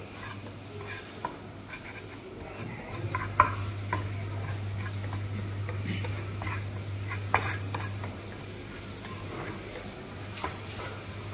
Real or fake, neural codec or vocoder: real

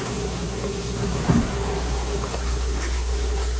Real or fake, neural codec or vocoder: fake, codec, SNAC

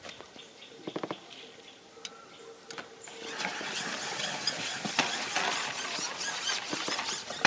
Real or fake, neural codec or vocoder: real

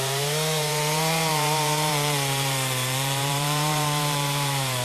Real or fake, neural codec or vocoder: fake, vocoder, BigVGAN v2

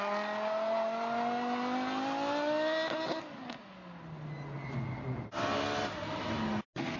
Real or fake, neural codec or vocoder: real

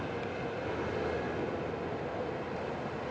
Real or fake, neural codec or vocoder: real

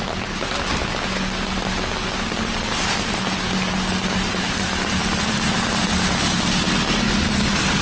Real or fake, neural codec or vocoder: real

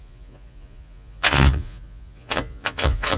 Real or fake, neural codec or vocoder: fake, vocoder, Vocos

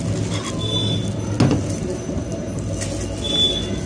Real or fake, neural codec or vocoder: real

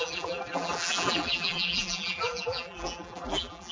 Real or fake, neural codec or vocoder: fake, vocoder, BigVGAN v2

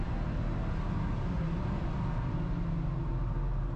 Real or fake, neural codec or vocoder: real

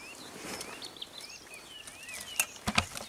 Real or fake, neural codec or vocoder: real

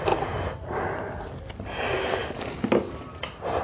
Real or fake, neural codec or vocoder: real